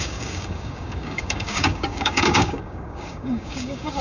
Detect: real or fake fake